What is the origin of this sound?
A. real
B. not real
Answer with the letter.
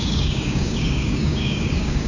B